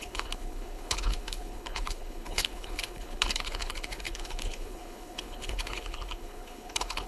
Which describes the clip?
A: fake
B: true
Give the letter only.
A